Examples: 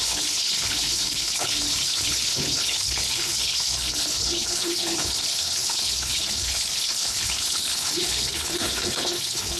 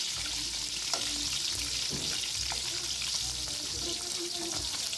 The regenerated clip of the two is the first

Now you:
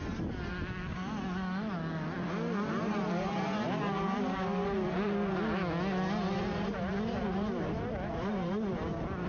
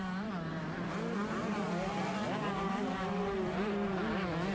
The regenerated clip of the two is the second